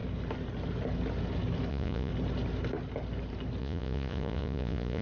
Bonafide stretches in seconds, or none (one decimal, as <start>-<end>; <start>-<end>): 0.0-1.7; 2.1-3.6

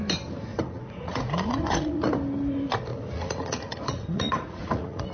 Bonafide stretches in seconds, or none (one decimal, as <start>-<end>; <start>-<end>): 0.0-0.5; 2.1-2.9

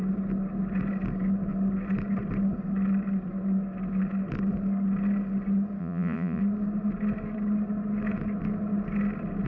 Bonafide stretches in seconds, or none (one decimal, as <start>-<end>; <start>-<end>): 0.0-5.8; 6.4-9.5

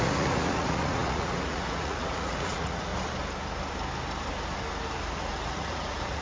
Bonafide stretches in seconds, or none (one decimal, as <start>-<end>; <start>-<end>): 2.9-5.2

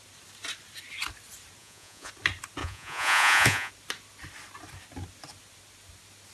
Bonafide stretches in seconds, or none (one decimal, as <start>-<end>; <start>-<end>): 0.0-1.6; 2.1-2.6; 3.7-6.3

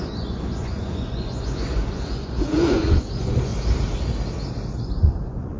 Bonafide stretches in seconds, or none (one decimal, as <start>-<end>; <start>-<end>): 3.5-4.8